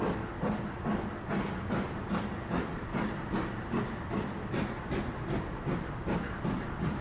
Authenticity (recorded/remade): recorded